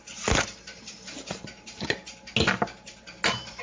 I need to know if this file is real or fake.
real